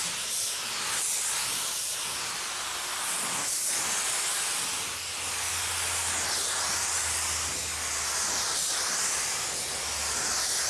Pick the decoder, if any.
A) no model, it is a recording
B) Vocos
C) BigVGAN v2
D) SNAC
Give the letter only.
A